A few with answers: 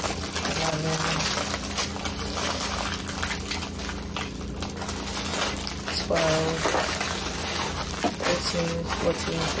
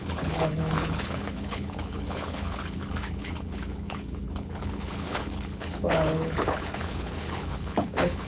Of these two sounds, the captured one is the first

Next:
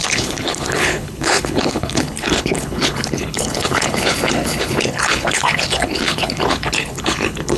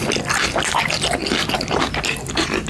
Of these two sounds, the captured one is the second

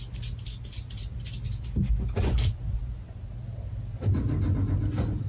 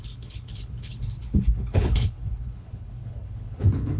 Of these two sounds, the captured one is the first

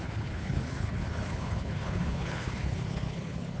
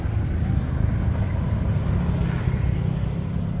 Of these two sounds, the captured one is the second